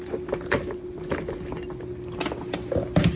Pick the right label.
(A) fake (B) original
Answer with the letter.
B